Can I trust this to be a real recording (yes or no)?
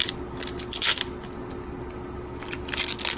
yes